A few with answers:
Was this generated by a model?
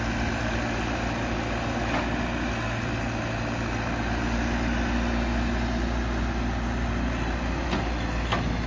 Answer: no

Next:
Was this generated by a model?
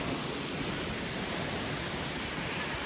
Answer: no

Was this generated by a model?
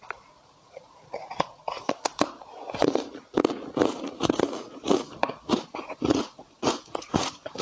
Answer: yes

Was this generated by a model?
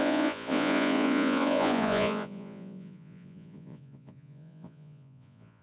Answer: yes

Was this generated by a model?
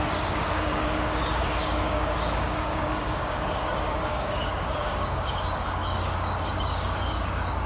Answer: yes